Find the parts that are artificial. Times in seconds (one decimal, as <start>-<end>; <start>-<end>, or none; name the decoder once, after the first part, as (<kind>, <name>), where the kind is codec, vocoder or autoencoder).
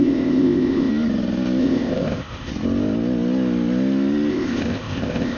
0.0-0.9 (codec, ZipCodec); 1.6-2.5; 4.3-5.4